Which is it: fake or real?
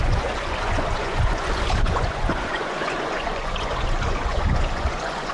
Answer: fake